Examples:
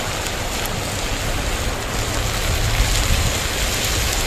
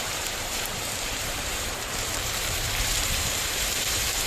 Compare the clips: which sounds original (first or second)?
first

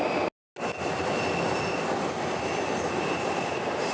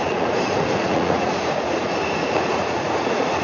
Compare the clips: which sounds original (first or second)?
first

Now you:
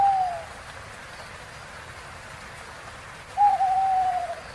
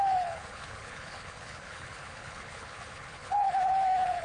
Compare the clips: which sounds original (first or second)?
first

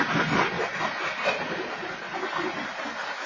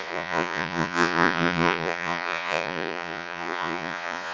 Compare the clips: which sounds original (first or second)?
first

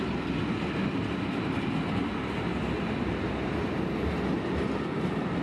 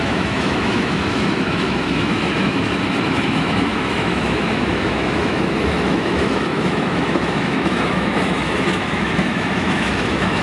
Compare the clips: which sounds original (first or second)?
first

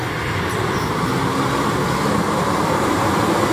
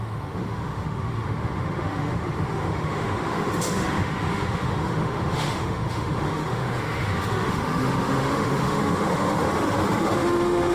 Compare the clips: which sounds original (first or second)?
first